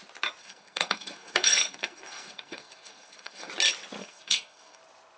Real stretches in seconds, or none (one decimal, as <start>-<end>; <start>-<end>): 0.0-0.4; 3.5-4.0; 4.8-5.2